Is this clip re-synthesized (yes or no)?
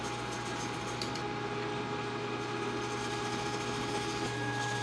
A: no